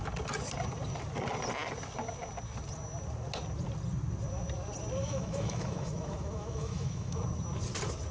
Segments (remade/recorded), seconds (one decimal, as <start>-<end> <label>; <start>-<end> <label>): 0.0-5.0 recorded; 5.0-7.2 remade; 7.2-8.1 recorded